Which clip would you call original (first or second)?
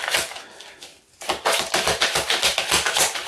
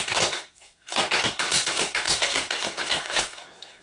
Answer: first